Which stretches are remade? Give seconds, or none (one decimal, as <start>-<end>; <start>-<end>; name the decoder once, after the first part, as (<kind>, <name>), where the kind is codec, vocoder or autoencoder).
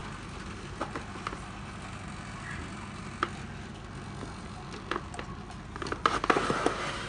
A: none